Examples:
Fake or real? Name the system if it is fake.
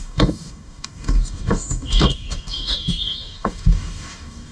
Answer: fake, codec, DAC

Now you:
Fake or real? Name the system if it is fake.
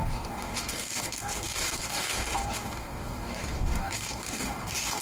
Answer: fake, codec, DAC